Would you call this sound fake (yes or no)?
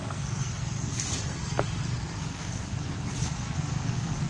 yes